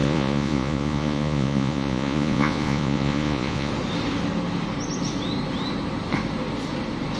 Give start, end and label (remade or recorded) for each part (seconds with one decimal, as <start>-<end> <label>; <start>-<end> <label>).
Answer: 0.0-3.7 remade; 3.7-7.2 recorded